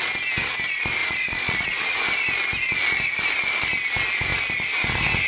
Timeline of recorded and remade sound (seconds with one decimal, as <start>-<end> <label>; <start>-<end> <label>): 0.0-1.0 recorded; 1.0-1.8 remade; 1.8-5.3 recorded